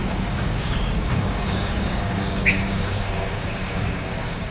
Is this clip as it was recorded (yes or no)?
no